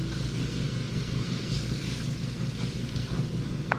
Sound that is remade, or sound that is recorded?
remade